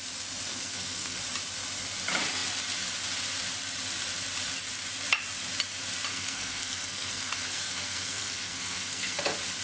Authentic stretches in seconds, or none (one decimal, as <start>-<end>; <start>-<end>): 0.0-0.5; 1.2-6.1; 9.2-9.6